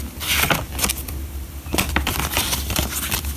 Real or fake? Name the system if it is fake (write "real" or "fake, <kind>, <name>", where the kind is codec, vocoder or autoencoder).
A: fake, vocoder, BigVGAN v2